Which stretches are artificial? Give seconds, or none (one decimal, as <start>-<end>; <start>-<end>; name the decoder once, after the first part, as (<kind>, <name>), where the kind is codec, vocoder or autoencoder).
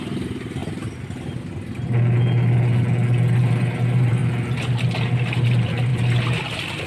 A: 0.0-0.6 (vocoder, BigVGAN v2); 3.4-4.2; 4.8-5.9; 6.5-6.9